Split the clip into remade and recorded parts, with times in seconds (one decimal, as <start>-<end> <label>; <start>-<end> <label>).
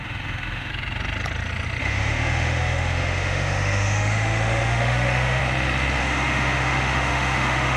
0.0-0.7 remade; 0.7-1.8 recorded; 1.8-5.4 remade; 5.4-6.0 recorded; 6.0-7.8 remade